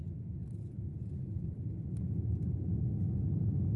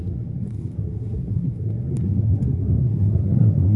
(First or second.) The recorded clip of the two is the first